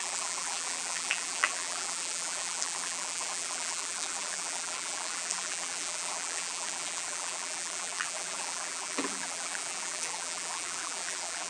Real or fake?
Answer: fake